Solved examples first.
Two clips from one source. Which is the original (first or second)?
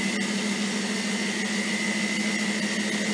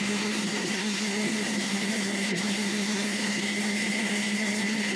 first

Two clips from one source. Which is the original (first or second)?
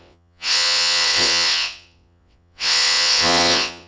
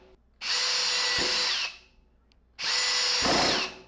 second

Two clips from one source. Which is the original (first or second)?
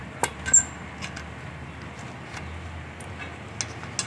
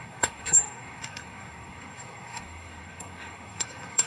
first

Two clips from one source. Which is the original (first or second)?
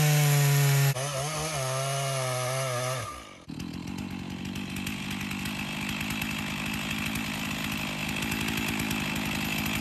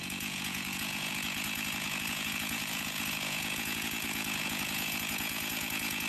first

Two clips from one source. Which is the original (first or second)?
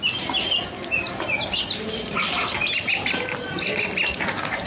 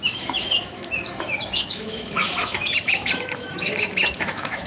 first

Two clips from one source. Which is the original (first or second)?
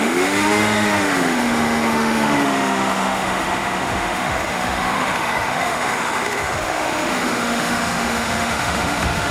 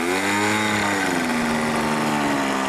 second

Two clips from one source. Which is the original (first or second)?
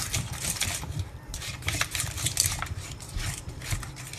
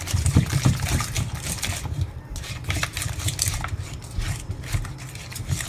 second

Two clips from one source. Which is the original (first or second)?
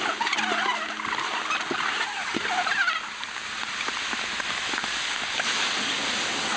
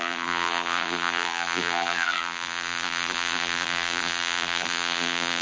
first